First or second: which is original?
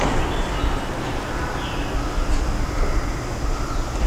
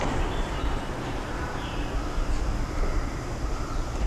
first